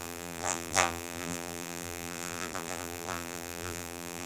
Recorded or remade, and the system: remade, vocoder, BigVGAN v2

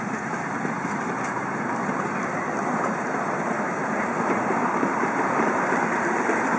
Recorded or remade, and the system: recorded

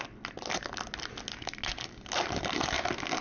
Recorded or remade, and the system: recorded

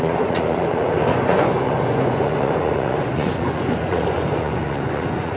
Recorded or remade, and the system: remade, vocoder, Vocos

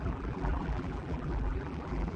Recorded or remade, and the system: remade, vocoder, BigVGAN v2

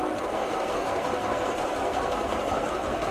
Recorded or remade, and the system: remade, codec, SNAC